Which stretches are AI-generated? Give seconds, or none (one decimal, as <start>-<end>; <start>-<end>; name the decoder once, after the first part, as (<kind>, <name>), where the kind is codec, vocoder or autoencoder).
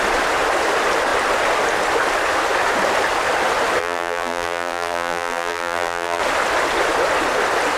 3.8-6.2 (vocoder, BigVGAN v2)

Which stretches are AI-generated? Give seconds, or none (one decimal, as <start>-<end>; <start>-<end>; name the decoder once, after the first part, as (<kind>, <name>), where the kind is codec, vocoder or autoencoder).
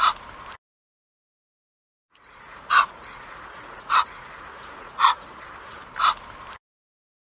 2.0-5.3 (vocoder, Vocos)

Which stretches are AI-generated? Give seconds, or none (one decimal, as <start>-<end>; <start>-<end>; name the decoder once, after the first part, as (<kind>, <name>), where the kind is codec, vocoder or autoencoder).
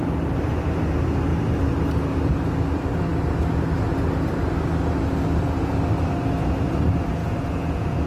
7.2-8.1 (vocoder, Vocos)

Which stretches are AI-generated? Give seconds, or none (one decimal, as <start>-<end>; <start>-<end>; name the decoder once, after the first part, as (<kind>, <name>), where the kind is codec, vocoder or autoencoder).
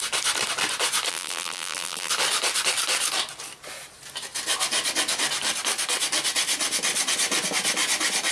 1.1-2.1 (vocoder, BigVGAN v2)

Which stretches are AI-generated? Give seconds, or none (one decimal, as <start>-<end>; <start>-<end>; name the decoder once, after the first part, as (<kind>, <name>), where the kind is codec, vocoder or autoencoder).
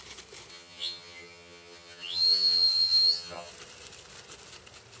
0.5-3.5 (vocoder, HiFi-GAN)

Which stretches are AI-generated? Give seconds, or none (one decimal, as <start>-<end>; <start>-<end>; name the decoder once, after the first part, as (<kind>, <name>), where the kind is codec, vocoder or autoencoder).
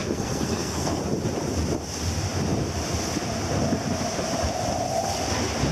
0.0-1.0 (codec, SNAC)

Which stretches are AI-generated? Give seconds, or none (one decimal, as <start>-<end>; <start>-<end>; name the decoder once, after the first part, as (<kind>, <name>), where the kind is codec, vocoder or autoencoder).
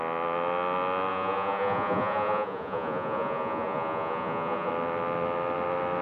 1.1-4.7 (vocoder, Vocos)